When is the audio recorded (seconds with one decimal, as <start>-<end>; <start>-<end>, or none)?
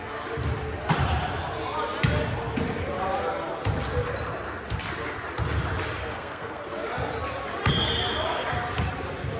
0.0-6.0; 6.6-9.4